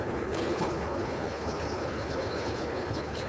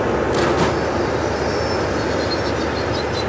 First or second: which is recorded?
second